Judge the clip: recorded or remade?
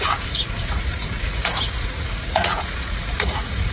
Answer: remade